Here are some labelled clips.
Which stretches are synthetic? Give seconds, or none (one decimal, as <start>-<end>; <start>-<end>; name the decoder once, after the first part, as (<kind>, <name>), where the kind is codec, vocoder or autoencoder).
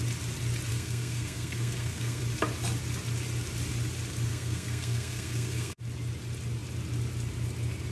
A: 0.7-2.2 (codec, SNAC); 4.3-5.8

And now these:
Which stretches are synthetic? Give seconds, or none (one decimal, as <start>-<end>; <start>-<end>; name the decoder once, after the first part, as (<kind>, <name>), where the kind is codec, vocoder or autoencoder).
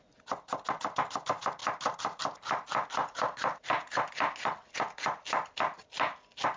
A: none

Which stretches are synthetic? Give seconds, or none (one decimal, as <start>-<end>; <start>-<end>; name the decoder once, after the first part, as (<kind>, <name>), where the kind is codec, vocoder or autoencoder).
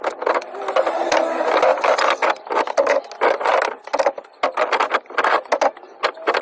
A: none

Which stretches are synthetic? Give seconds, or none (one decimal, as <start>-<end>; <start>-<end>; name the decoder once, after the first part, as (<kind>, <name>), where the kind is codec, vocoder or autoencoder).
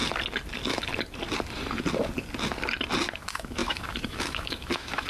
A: 3.1-5.1 (autoencoder, DAC-VAE)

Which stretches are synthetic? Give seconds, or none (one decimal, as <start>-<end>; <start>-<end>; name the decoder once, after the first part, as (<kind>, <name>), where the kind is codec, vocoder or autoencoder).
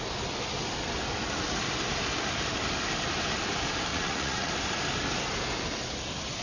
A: 3.9-4.5 (vocoder, Vocos)